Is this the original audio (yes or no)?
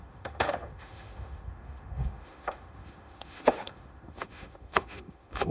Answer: no